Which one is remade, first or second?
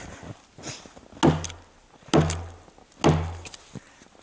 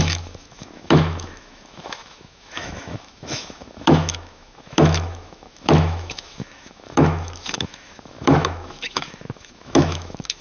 second